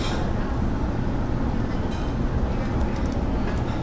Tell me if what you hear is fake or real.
real